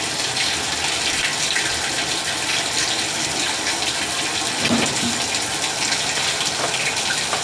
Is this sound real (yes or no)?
yes